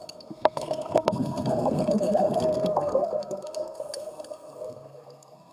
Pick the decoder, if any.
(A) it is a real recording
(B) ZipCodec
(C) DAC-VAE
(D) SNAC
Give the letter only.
D